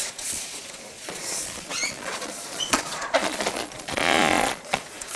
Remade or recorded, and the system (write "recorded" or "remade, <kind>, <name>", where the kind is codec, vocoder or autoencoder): remade, vocoder, Vocos